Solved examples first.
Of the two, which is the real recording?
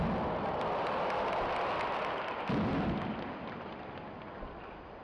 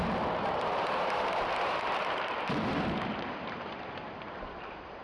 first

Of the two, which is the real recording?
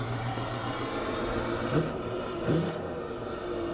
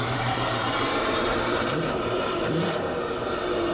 first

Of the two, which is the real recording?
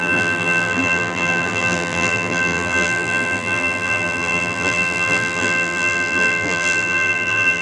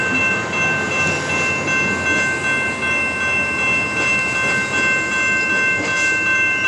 second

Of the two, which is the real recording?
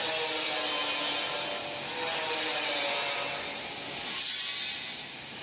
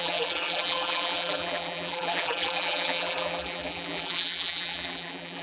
first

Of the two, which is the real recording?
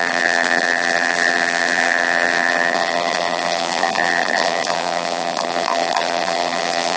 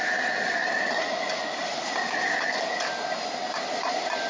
second